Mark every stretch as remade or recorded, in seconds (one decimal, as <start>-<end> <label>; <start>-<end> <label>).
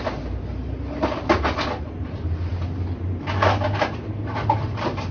0.0-5.1 recorded